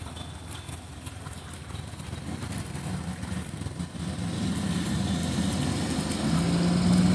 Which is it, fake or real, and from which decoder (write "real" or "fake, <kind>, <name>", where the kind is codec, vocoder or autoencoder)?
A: real